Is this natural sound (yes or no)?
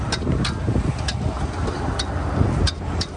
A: yes